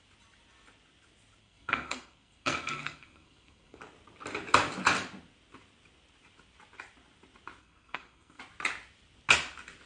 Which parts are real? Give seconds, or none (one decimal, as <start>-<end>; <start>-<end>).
0.0-1.4; 3.8-7.6; 8.4-9.9